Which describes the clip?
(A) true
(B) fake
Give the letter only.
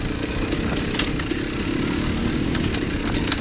A